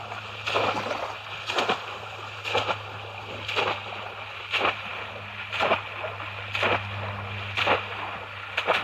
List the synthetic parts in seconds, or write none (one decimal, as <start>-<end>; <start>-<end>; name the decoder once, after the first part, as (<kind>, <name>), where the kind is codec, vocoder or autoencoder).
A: none

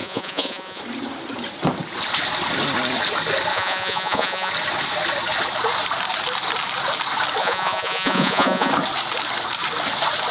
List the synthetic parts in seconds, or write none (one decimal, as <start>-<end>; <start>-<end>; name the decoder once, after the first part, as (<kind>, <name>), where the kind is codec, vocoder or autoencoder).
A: 0.0-0.8 (vocoder, Vocos); 3.5-4.5; 7.4-8.7

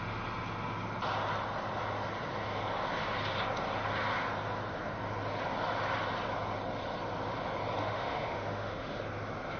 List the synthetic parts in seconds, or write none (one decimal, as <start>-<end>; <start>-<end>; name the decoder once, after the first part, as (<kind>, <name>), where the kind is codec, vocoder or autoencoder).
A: 7.8-9.0 (autoencoder, DAC-VAE)

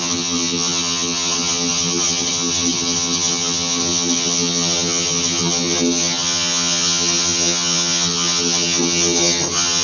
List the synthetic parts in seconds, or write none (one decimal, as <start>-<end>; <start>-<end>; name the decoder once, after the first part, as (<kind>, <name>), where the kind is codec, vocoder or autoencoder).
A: 0.0-9.8 (vocoder, HiFi-GAN)

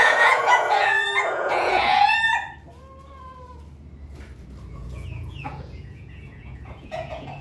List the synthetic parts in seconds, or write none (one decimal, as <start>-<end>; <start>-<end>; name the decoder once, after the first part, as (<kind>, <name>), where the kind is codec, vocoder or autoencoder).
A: 0.0-2.3 (vocoder, Vocos); 4.7-7.4

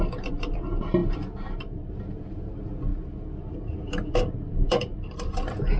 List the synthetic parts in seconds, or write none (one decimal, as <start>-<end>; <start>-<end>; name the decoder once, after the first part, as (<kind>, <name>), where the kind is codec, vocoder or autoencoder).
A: 0.0-2.9 (vocoder, BigVGAN v2); 3.5-5.8

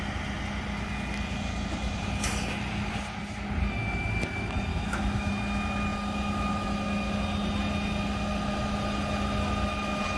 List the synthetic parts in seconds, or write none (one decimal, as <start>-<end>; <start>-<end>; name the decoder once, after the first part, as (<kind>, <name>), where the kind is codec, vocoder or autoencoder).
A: 4.7-5.3 (autoencoder, DAC-VAE)